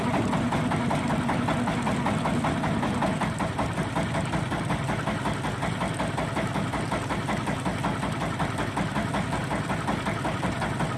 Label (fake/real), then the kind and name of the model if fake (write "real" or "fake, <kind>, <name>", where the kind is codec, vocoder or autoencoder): real